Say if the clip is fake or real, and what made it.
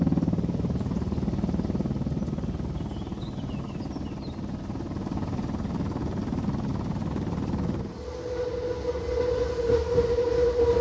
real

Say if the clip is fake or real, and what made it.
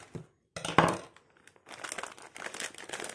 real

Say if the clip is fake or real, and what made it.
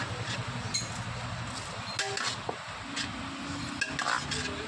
real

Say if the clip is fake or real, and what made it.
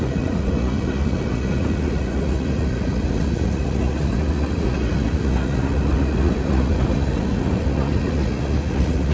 fake, vocoder, Vocos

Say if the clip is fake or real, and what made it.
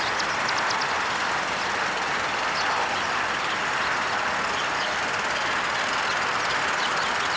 real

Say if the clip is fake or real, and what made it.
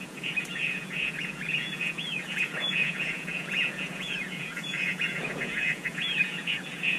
fake, vocoder, Vocos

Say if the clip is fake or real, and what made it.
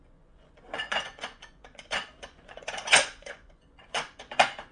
fake, vocoder, Vocos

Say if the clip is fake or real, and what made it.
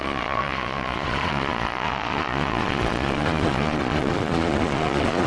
fake, vocoder, Vocos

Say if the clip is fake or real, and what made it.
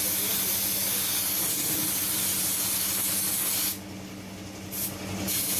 real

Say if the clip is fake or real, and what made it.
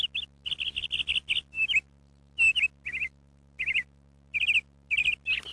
real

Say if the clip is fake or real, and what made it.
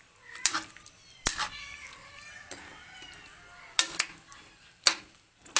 real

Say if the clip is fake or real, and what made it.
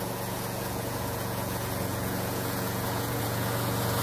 fake, vocoder, Vocos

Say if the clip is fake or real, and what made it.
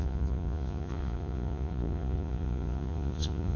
fake, vocoder, Vocos